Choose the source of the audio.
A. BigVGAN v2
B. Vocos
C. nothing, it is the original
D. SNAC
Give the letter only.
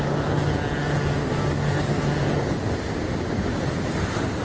C